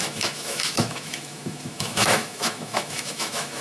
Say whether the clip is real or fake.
fake